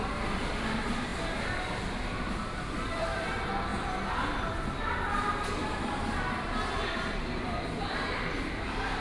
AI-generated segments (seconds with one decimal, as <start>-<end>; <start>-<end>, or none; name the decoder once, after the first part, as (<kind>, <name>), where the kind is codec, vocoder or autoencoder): 0.0-1.1 (vocoder, BigVGAN v2); 1.9-3.7; 6.8-9.0